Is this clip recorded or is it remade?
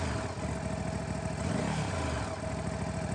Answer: recorded